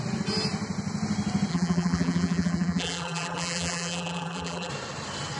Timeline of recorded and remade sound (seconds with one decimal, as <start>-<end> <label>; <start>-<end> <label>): 0.0-1.5 recorded; 1.5-4.7 remade; 4.7-5.4 recorded